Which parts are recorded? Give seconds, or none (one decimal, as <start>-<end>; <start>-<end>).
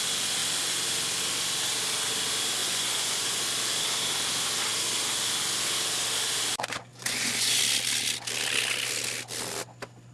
0.0-2.6; 3.4-6.9; 7.6-10.1